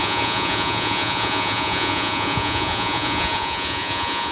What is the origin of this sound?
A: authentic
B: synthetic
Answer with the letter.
B